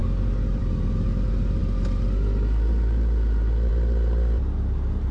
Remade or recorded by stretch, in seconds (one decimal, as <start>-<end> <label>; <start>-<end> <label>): 0.0-5.1 recorded